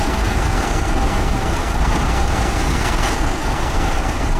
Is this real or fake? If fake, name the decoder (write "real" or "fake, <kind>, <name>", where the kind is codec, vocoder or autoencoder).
fake, codec, SNAC